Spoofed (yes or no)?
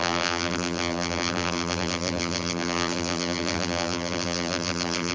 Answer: yes